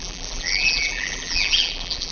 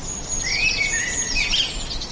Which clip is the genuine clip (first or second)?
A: second